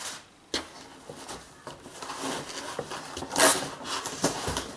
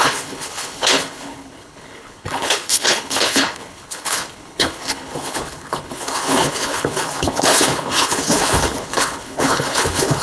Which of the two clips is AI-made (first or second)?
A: second